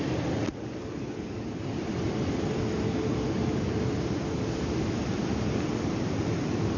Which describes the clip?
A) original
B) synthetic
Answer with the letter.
B